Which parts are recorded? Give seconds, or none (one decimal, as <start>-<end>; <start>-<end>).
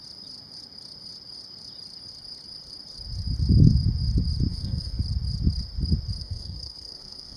0.0-4.5; 5.0-6.2